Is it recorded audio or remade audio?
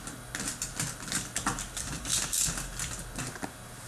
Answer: recorded